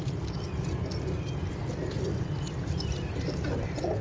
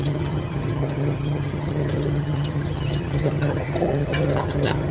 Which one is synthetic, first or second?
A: second